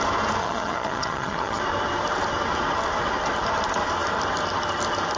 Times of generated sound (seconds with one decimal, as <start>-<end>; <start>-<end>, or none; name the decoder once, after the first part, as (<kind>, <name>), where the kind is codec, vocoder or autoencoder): 0.4-1.6 (vocoder, HiFi-GAN)